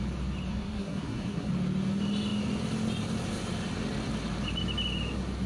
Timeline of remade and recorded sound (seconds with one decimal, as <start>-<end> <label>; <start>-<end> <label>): 0.0-0.5 recorded; 0.5-1.5 remade; 1.5-5.5 recorded